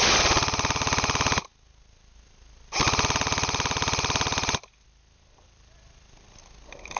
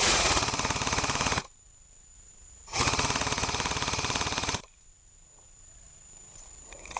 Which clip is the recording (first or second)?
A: first